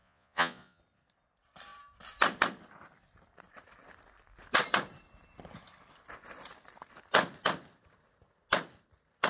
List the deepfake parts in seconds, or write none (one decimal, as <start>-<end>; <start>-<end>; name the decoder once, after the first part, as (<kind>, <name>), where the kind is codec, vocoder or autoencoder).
0.0-0.8 (vocoder, Vocos)